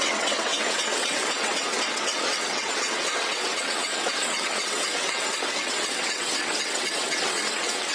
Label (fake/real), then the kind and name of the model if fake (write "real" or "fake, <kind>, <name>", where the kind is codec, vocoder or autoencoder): fake, vocoder, WaveNeXt